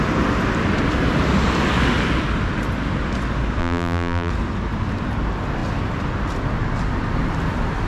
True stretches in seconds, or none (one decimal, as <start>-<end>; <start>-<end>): 0.0-3.6; 4.3-7.9